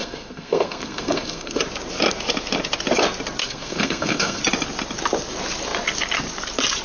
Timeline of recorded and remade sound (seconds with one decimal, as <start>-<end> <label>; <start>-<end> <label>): 0.0-1.6 remade; 1.6-3.4 recorded; 3.4-4.4 remade; 4.4-6.8 recorded